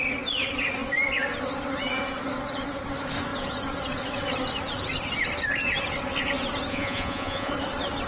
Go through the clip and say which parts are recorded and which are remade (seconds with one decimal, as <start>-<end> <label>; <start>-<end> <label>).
0.0-6.7 recorded; 6.7-7.5 remade; 7.5-8.1 recorded